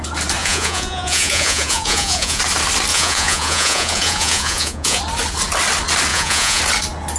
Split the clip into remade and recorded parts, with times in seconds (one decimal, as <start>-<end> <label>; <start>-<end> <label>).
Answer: 0.0-0.4 recorded; 0.4-2.4 remade; 2.4-2.9 recorded; 2.9-5.0 remade; 5.0-6.1 recorded; 6.1-6.6 remade; 6.6-7.2 recorded